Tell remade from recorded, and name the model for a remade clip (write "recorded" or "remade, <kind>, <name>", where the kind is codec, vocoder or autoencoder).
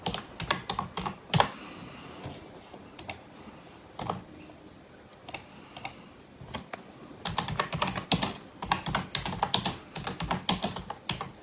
recorded